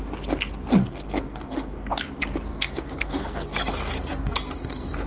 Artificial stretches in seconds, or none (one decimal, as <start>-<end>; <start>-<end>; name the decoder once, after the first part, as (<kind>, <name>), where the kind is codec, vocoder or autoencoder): 0.8-1.9 (codec, SNAC); 2.5-5.1